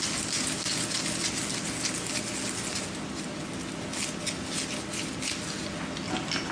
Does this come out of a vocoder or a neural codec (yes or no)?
no